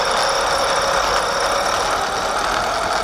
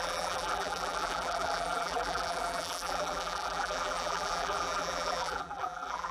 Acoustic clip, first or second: first